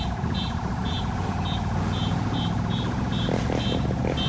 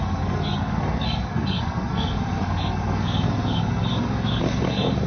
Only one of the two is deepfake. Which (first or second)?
second